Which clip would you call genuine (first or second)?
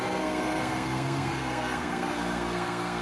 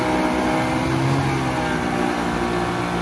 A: second